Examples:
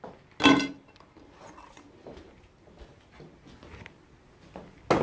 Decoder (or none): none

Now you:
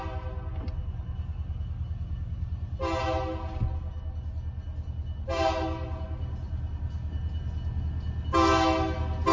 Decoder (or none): none